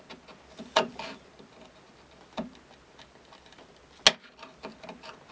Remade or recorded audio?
recorded